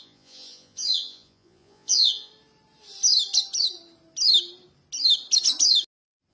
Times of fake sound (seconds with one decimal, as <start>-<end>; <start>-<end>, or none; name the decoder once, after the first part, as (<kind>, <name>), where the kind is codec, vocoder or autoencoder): 0.0-2.3 (vocoder, Vocos)

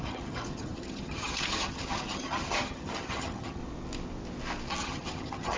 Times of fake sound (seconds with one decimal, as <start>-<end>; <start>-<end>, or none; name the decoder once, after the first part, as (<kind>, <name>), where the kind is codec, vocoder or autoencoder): 0.0-3.6 (vocoder, HiFi-GAN); 4.8-5.6

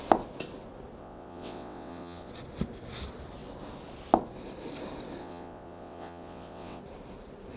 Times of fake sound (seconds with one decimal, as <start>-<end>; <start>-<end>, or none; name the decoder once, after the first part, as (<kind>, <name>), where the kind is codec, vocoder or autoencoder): 1.0-2.3 (vocoder, WaveNeXt); 5.2-6.8